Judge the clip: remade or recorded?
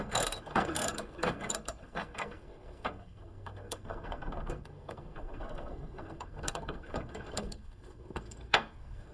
remade